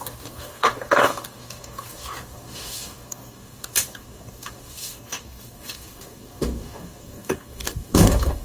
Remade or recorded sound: remade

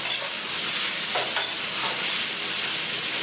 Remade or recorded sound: recorded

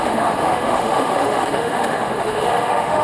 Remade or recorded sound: remade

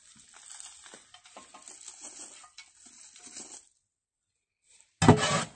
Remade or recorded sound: recorded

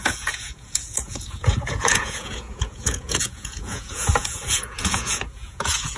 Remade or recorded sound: remade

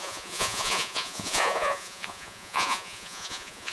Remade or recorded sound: remade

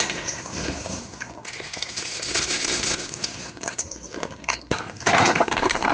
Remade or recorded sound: remade